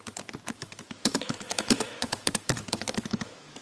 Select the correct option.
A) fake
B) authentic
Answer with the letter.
A